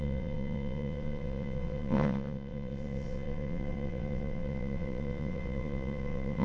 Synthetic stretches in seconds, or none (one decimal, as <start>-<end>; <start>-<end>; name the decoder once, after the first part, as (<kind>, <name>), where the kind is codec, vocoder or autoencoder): 0.0-6.4 (vocoder, WaveNeXt)